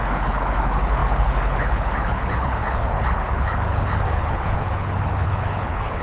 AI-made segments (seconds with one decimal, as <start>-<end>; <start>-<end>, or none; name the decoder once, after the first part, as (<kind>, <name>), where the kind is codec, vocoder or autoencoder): 0.0-6.0 (codec, HILCodec)